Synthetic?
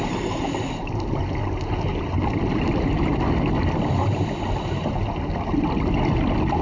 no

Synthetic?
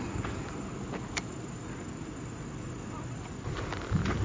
no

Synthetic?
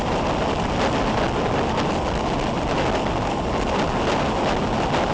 no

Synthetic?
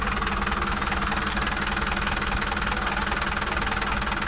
no